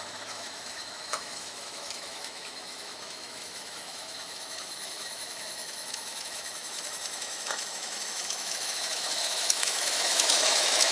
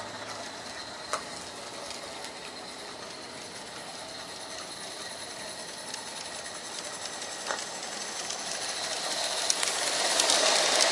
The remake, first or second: first